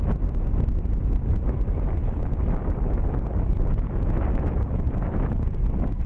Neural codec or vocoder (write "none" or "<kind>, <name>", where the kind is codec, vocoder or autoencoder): none